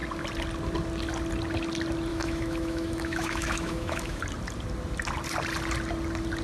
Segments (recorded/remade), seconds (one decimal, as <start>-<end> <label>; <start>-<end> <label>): 0.0-2.1 recorded; 2.1-4.2 remade; 4.2-6.4 recorded